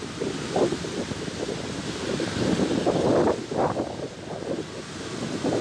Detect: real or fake real